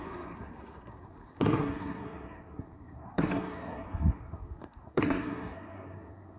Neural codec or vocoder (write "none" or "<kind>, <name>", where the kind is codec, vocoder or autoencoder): codec, SNAC